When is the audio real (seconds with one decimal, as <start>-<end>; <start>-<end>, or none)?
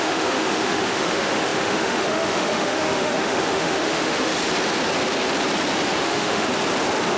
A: 4.3-6.0; 6.5-7.2